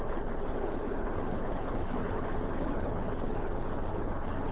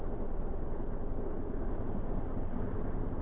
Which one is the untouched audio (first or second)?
second